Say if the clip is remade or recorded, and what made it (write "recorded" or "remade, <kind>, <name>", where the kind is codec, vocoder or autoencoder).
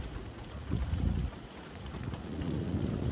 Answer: remade, vocoder, Vocos